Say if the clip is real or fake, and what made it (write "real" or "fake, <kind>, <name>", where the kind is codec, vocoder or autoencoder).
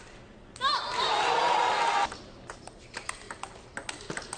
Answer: real